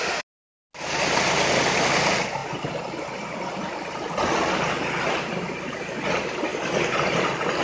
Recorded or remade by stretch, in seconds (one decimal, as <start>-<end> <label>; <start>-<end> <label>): 0.0-7.6 recorded